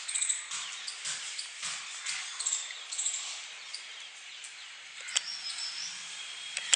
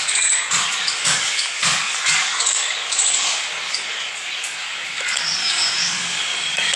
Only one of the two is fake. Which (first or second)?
second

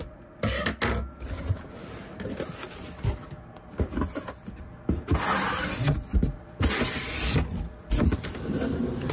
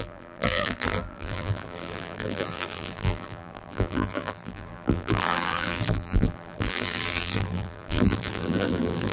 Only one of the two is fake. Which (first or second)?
second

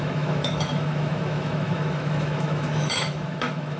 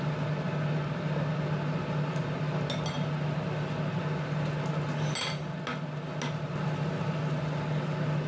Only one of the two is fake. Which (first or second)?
first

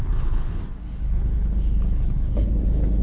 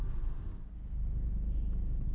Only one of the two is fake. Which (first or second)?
first